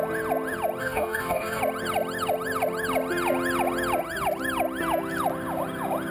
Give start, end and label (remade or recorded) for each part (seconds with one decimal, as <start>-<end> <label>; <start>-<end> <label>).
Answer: 0.0-0.8 recorded; 0.8-1.6 remade; 1.6-6.1 recorded